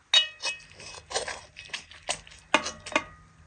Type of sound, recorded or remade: recorded